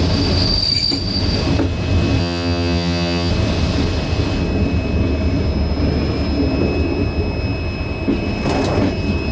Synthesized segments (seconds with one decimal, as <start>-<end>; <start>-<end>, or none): 2.2-3.3